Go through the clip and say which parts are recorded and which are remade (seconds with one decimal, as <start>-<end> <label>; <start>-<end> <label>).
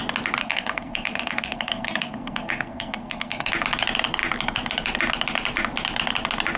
0.0-0.4 recorded; 0.4-3.5 remade; 3.5-6.6 recorded